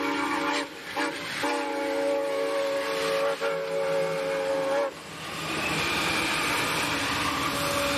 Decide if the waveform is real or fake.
real